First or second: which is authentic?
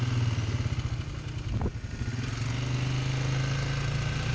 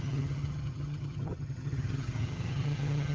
first